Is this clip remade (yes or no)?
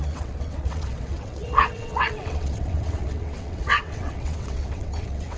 yes